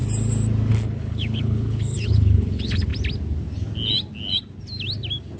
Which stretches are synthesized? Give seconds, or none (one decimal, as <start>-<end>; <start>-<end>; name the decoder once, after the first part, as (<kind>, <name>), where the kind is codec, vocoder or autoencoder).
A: 0.7-2.9 (codec, HILCodec)